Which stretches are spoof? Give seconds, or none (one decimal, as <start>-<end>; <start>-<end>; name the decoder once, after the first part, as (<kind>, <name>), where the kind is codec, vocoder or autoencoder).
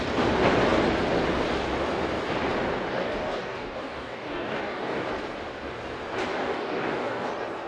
2.9-5.1 (codec, DAC); 6.3-7.3